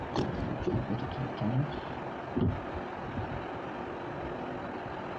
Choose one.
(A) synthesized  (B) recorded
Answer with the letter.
B